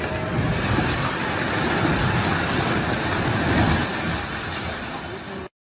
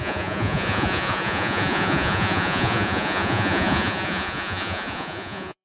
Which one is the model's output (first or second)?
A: second